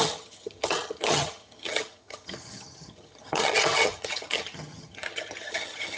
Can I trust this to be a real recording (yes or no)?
no